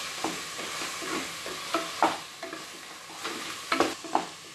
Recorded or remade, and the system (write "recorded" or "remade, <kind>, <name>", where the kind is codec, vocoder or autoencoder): recorded